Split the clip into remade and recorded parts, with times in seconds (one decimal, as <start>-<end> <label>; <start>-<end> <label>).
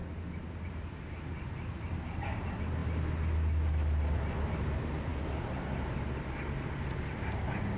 0.0-7.8 recorded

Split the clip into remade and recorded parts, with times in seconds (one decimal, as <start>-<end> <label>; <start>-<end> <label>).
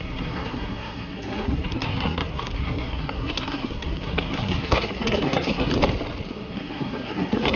0.0-5.7 remade; 5.7-6.3 recorded; 6.3-7.6 remade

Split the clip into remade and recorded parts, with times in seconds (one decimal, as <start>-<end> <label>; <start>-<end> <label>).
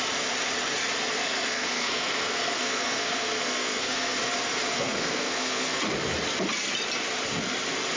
0.0-1.2 recorded; 1.2-4.2 remade; 4.2-4.7 recorded; 4.7-5.8 remade; 5.8-8.0 recorded